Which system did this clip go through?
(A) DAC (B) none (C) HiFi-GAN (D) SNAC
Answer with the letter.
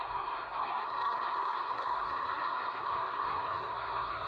D